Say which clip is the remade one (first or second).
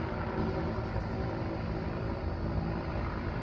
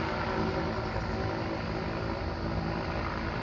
first